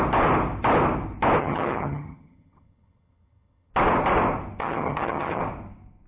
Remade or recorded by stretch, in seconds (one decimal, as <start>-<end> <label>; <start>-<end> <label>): 0.0-1.4 recorded; 1.4-3.7 remade; 3.7-4.6 recorded; 4.6-5.4 remade; 5.4-6.1 recorded